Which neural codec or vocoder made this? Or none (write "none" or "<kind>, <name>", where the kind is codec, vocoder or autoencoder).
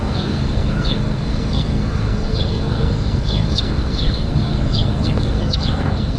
codec, SNAC